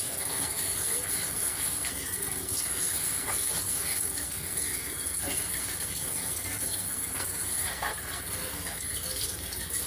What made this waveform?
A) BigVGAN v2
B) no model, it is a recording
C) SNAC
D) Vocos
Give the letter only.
C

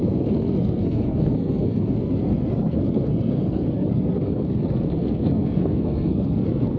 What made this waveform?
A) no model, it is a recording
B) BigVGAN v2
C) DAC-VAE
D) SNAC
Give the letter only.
D